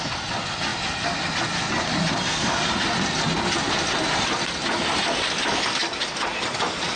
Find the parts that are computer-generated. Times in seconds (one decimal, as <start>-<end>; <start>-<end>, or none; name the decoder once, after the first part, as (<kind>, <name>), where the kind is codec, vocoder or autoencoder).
none